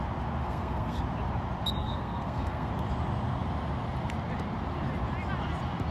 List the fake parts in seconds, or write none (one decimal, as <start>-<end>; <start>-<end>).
0.4-1.0; 1.8-2.7